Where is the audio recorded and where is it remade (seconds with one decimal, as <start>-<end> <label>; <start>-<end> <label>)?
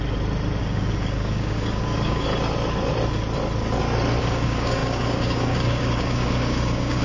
0.0-0.6 recorded; 0.6-2.3 remade; 2.3-4.2 recorded; 4.2-7.0 remade